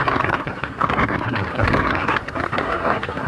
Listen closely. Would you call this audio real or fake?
fake